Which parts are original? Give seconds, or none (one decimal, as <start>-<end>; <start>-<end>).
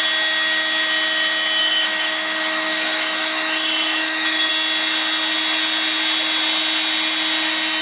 0.0-1.6; 4.5-7.8